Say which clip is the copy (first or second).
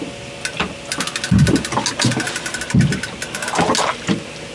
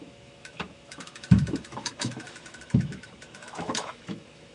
second